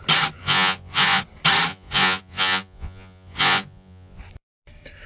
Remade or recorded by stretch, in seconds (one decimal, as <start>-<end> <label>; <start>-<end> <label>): 0.0-0.4 recorded; 0.4-1.2 remade; 1.2-1.7 recorded; 1.7-4.2 remade; 4.2-5.1 recorded